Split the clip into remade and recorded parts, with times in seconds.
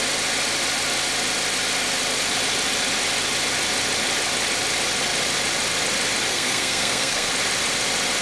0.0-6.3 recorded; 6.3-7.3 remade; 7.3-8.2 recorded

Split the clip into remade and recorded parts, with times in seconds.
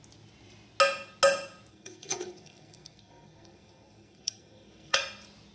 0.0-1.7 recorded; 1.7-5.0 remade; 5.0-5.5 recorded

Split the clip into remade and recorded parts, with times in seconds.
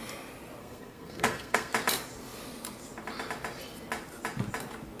0.0-0.6 recorded; 0.6-1.7 remade; 1.7-5.0 recorded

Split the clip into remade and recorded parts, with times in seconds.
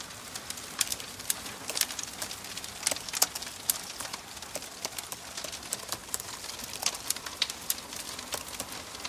0.0-0.9 recorded; 0.9-2.8 remade; 2.8-6.0 recorded; 6.0-8.4 remade; 8.4-9.1 recorded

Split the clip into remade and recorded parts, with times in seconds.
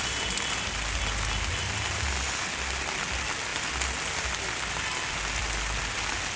0.0-6.4 recorded